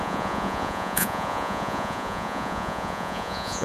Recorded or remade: remade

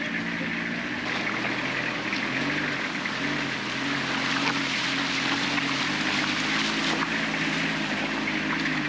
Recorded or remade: recorded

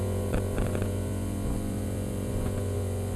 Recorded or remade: remade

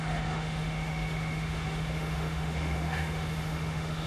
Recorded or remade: remade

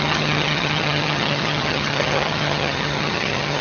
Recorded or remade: remade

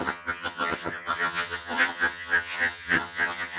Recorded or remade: remade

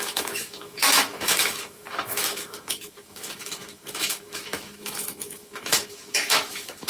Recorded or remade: remade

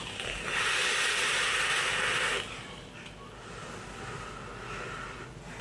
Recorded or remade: recorded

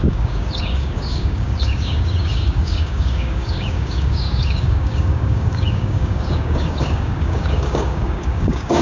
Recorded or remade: remade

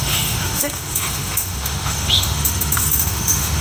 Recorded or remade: remade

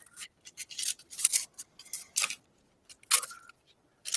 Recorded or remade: recorded